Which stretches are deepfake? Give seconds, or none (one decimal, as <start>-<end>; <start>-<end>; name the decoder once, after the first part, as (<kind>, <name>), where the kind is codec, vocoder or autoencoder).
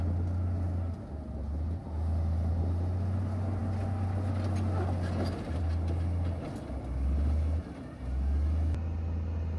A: none